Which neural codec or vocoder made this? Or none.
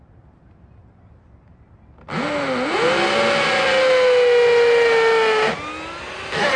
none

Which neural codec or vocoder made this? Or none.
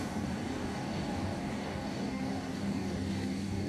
codec, DAC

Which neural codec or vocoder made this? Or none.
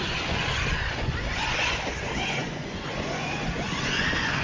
vocoder, Vocos